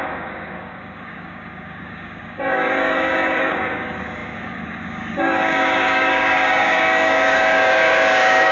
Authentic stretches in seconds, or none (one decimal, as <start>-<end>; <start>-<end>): none